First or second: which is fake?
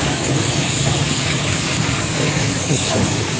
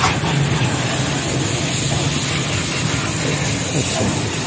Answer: first